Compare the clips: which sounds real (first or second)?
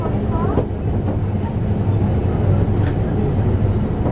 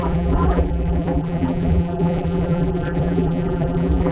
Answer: first